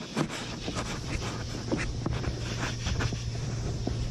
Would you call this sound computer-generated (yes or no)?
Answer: no